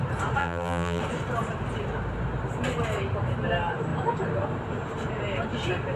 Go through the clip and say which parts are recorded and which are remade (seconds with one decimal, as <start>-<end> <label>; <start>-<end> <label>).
0.0-0.4 recorded; 0.4-1.0 remade; 1.0-6.0 recorded